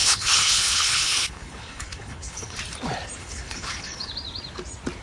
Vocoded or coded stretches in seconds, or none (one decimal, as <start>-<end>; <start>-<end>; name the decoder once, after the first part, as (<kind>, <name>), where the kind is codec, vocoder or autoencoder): 0.0-2.6 (codec, HILCodec); 3.2-4.1